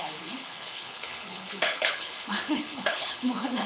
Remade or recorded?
remade